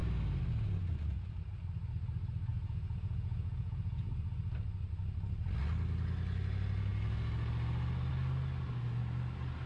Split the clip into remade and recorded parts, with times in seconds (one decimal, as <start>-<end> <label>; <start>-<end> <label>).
0.0-2.5 recorded; 2.5-4.1 remade; 4.1-9.7 recorded